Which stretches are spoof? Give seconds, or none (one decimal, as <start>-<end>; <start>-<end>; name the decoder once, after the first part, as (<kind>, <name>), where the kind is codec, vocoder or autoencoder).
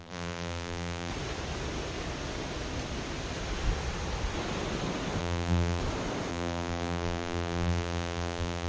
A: 0.0-1.1 (vocoder, BigVGAN v2); 5.2-5.8; 6.3-8.7